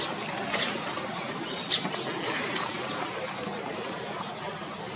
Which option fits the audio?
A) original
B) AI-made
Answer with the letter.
A